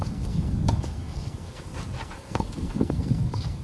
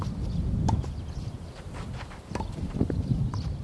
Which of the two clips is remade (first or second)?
first